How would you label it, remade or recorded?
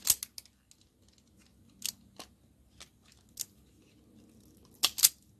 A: recorded